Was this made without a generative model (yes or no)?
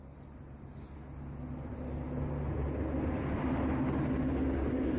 yes